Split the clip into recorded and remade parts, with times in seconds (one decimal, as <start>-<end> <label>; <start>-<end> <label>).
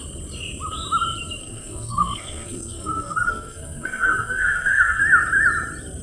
0.0-1.4 recorded; 1.4-5.0 remade; 5.0-6.0 recorded